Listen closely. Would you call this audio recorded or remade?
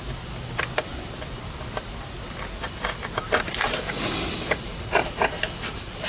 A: recorded